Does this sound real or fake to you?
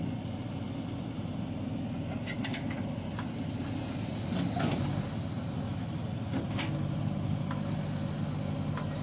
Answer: real